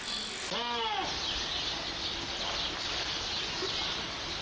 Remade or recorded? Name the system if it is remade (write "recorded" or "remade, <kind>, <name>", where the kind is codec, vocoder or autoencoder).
recorded